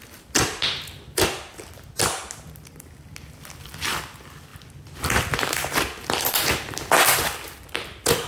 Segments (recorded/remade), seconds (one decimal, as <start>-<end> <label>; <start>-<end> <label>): 0.0-8.3 recorded